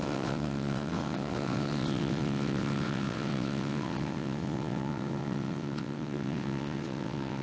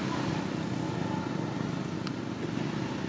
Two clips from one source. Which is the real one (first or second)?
second